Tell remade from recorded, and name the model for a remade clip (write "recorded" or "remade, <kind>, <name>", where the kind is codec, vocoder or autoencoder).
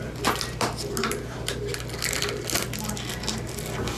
recorded